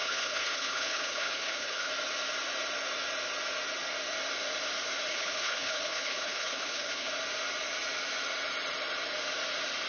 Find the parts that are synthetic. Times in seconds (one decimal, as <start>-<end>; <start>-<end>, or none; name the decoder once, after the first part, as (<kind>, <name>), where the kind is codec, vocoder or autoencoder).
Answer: 0.0-1.9 (codec, HILCodec); 5.1-7.1